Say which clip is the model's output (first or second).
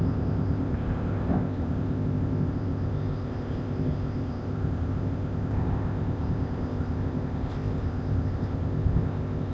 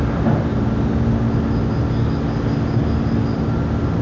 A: first